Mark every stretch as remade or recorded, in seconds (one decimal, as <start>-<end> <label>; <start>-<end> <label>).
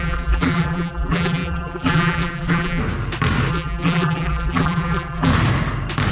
0.0-2.8 remade; 2.8-3.5 recorded; 3.5-5.3 remade; 5.3-6.1 recorded